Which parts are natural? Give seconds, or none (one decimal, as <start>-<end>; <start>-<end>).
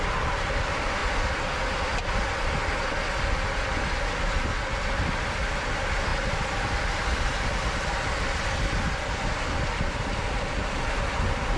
0.0-1.0; 2.4-6.1